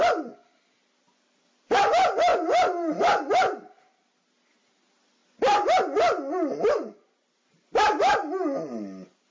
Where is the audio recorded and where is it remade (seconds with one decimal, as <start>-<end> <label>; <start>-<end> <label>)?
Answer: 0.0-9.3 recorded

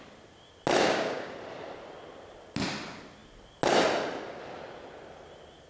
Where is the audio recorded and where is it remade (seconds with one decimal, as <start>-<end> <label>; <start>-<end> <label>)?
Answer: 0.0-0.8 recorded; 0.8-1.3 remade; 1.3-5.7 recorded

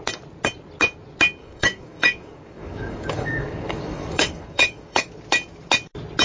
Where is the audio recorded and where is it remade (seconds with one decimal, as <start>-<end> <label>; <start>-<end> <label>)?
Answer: 0.0-1.4 recorded; 1.4-5.1 remade; 5.1-6.2 recorded